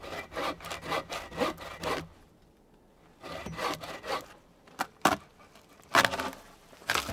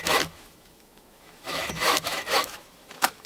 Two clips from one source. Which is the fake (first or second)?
second